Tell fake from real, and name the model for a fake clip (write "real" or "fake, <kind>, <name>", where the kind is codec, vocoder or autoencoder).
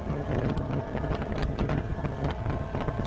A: fake, vocoder, HiFi-GAN